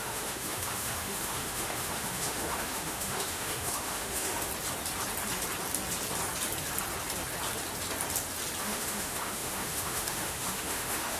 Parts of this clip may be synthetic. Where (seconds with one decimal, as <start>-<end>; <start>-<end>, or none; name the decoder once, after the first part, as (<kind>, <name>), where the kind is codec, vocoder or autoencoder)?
0.0-4.5 (autoencoder, DAC-VAE); 8.6-11.2